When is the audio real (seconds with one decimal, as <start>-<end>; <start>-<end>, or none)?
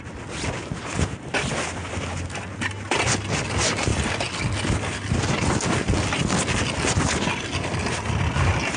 0.0-8.8